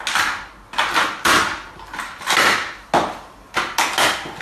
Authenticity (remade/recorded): recorded